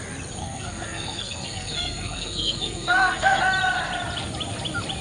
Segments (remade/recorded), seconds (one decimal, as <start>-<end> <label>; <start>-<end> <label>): 0.0-0.4 recorded; 0.4-3.4 remade; 3.4-5.0 recorded